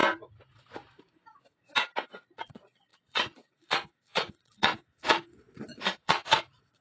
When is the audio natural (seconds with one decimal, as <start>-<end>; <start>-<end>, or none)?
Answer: 0.0-2.2